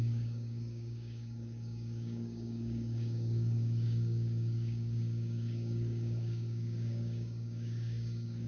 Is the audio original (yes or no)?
no